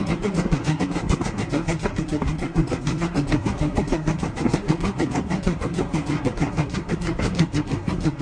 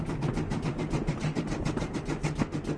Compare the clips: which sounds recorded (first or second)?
second